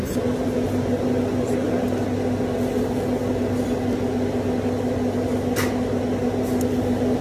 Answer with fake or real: real